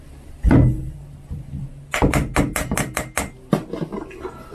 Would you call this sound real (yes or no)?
yes